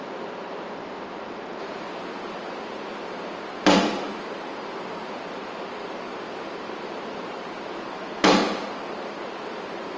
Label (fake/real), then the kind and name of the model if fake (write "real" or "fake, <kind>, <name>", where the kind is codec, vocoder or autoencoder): real